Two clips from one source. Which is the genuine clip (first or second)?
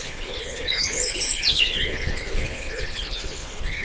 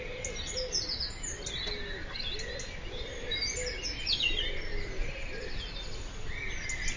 second